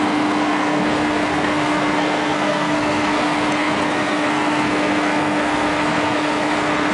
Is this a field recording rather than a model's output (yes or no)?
no